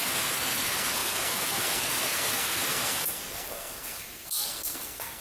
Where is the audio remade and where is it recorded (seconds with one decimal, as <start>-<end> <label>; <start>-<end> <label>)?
0.0-5.2 remade